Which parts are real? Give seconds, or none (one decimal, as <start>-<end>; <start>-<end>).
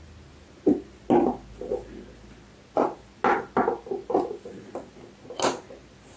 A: 0.0-6.2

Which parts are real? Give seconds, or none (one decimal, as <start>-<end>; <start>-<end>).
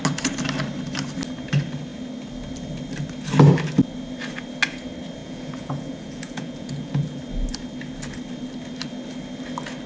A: 0.0-5.2; 7.2-9.9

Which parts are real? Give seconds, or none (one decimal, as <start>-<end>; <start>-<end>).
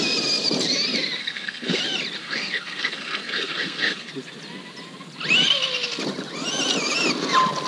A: 0.0-1.2; 1.8-2.2; 4.1-7.7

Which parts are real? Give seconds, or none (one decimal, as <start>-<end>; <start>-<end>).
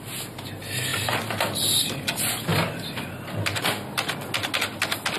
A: 0.0-5.2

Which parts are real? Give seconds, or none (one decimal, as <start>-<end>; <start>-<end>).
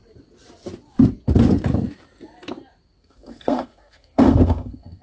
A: 0.0-3.0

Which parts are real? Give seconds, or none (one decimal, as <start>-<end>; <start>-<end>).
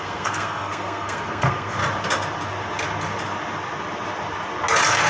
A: 1.8-5.1